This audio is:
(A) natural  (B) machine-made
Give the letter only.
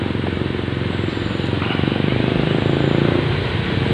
A